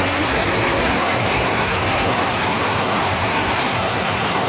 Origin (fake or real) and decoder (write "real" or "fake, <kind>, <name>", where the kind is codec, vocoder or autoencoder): fake, codec, SNAC